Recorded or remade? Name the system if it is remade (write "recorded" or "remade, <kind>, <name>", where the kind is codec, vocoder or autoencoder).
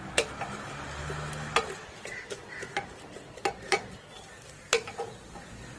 remade, vocoder, BigVGAN v2